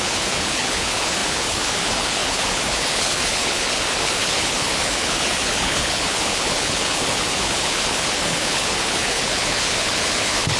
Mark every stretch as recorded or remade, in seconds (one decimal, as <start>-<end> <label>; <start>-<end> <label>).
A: 0.0-10.6 remade